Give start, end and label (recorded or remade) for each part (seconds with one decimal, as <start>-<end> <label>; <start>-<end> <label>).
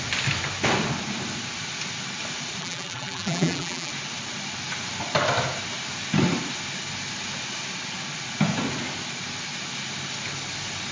0.0-2.6 recorded; 2.6-3.9 remade; 3.9-10.9 recorded